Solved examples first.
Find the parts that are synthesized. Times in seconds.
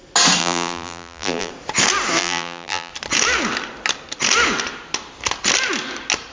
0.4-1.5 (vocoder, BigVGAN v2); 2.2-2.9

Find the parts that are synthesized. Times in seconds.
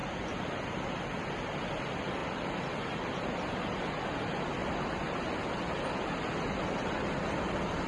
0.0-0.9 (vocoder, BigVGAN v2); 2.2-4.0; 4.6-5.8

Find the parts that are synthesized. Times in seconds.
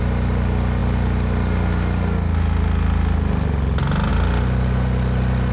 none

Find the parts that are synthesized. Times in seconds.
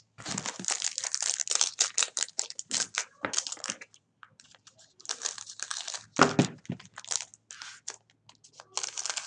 1.4-5.9 (vocoder, BigVGAN v2)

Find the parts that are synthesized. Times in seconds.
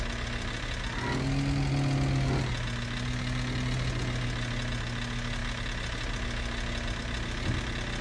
none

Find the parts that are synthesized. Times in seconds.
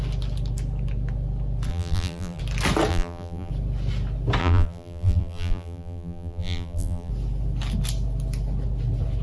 1.7-2.4 (vocoder, BigVGAN v2); 2.9-3.5; 4.4-7.1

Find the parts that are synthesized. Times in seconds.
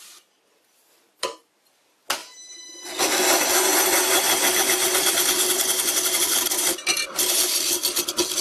none